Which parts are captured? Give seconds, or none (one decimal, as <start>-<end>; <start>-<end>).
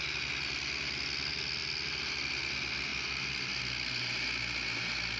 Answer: 0.0-5.2